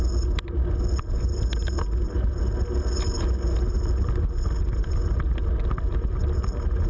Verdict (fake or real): real